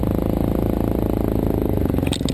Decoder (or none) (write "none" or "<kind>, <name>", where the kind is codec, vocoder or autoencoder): none